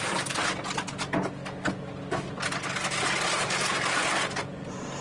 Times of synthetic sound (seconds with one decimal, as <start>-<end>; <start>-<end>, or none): none

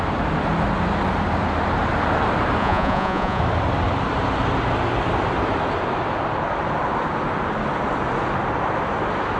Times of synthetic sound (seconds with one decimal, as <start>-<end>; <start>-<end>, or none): 2.6-3.4